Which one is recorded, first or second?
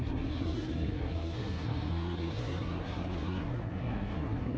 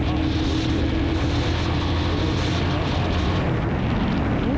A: second